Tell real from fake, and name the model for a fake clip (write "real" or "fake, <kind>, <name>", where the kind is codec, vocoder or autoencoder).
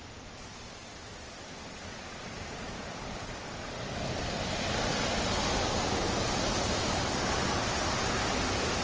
real